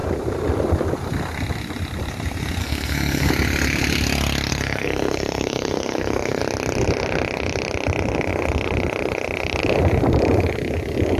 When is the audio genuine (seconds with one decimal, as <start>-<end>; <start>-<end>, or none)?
0.0-2.6; 3.3-4.5; 6.4-11.2